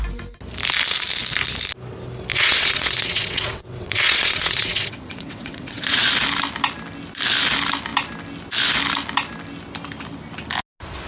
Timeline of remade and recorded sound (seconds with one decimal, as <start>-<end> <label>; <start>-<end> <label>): 0.0-2.3 recorded; 2.3-6.1 remade; 6.1-11.1 recorded